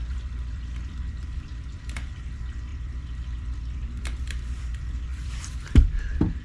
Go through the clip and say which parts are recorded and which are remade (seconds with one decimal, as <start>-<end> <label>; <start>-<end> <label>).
0.0-6.4 remade